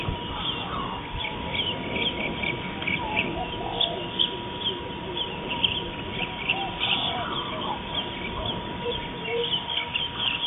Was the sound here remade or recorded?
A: remade